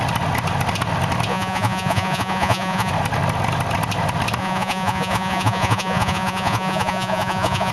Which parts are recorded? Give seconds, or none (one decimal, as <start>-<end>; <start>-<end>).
0.0-1.3; 2.9-4.4